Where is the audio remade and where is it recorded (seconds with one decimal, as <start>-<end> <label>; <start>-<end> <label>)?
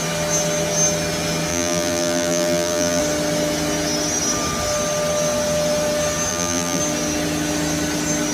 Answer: 0.0-1.5 recorded; 1.5-3.0 remade; 3.0-6.3 recorded; 6.3-6.8 remade; 6.8-8.3 recorded